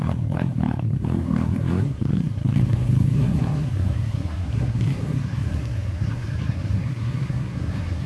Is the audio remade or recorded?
remade